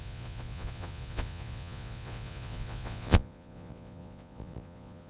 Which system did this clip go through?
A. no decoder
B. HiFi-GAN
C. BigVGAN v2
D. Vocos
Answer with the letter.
D